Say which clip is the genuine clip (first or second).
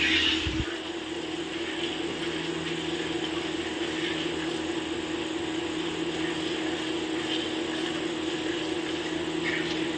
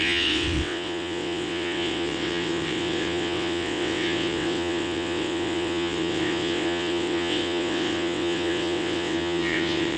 first